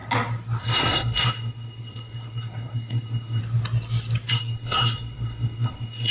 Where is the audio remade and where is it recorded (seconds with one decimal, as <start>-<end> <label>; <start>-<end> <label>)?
0.0-0.6 recorded; 0.6-3.4 remade; 3.4-4.3 recorded; 4.3-6.1 remade